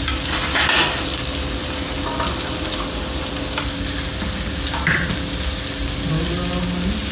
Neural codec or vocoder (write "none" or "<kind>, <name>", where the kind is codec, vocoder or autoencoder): none